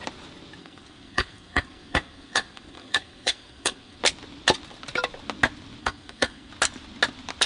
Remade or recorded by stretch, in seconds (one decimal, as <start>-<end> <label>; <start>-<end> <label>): 0.0-0.6 recorded; 0.6-4.0 remade; 4.0-5.8 recorded; 5.8-6.5 remade; 6.5-7.5 recorded